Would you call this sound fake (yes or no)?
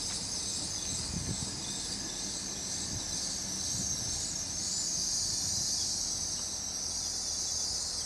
no